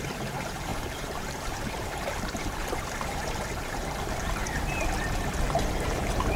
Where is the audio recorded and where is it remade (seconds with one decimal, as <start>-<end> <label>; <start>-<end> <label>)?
0.0-4.4 remade; 4.4-5.4 recorded; 5.4-6.4 remade